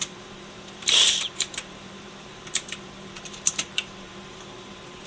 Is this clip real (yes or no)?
no